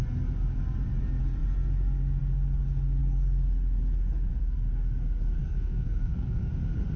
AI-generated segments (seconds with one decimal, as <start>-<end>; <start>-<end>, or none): 5.4-6.5